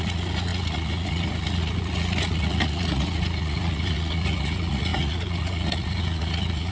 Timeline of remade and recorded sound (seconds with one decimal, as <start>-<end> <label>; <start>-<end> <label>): 0.0-6.7 remade